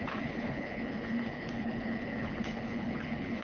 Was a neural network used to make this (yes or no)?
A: yes